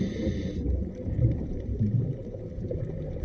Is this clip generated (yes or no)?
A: yes